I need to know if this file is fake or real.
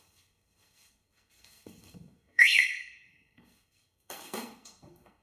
fake